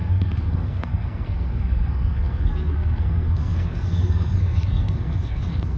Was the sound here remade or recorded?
remade